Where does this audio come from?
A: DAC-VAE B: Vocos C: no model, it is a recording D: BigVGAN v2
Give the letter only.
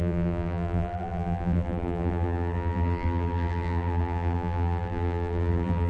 D